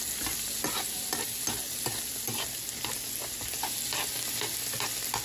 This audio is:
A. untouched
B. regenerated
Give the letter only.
A